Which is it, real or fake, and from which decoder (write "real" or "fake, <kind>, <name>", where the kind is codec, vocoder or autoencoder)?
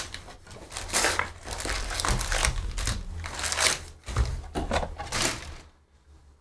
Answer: real